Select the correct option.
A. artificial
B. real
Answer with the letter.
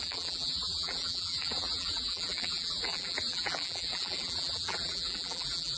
A